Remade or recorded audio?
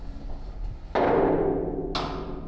recorded